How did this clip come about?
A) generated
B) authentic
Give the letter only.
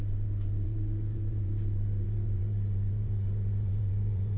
A